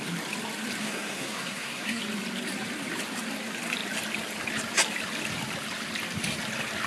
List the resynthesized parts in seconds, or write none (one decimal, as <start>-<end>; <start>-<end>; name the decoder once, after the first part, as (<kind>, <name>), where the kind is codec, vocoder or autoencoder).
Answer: 0.8-2.0 (codec, SNAC)